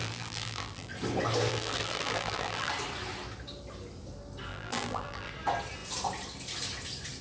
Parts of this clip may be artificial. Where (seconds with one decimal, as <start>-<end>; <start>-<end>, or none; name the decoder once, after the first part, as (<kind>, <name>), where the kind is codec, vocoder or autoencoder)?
0.0-0.9 (vocoder, BigVGAN v2); 1.5-2.7; 4.5-5.3